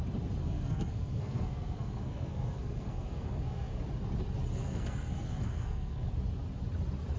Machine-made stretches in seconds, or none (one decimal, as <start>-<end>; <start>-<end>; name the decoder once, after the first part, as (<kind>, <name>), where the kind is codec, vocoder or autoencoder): 0.4-3.8 (codec, SNAC); 4.5-6.1